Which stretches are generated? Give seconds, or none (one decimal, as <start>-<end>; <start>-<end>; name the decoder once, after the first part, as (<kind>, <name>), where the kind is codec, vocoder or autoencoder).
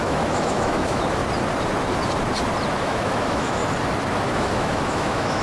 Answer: 0.0-1.2 (autoencoder, DAC-VAE); 2.8-3.6; 4.3-5.4